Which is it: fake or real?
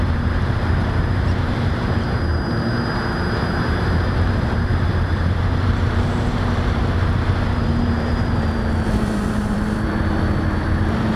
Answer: fake